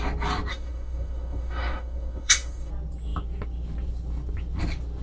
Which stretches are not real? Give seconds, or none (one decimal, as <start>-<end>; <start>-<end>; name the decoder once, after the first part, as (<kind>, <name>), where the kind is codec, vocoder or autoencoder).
0.5-2.7 (autoencoder, DAC-VAE)